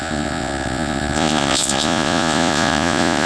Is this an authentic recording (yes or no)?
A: no